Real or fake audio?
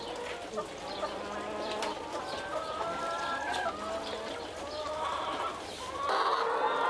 real